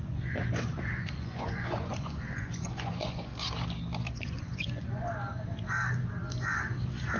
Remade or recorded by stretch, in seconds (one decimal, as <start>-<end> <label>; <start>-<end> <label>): 0.0-3.3 remade; 3.3-4.1 recorded; 4.1-5.1 remade; 5.1-7.2 recorded